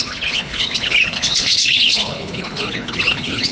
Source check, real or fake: fake